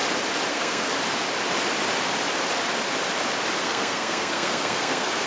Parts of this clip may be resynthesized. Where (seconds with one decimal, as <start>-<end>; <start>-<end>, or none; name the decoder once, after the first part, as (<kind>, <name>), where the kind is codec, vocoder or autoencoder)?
0.5-0.9 (codec, SNAC); 3.6-5.3